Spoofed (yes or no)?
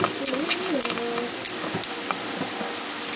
no